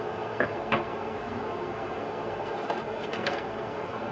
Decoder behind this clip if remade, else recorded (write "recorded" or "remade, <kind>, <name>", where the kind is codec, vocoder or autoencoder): remade, codec, SNAC